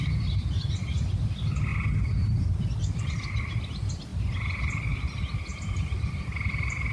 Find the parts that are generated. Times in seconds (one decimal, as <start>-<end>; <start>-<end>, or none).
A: 1.7-3.6; 4.1-5.0; 5.5-6.9